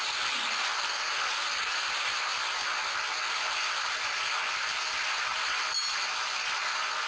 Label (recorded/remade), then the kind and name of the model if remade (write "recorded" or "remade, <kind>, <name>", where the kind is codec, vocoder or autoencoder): recorded